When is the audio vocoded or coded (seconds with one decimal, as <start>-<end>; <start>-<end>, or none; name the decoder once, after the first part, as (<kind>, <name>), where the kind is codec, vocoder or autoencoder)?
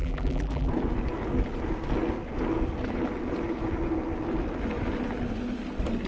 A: 0.0-0.7 (vocoder, BigVGAN v2)